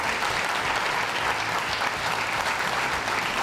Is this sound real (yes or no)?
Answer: yes